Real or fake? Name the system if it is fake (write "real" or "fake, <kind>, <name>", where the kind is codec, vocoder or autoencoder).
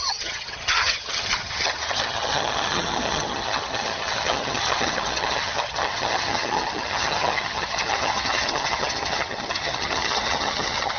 fake, vocoder, HiFi-GAN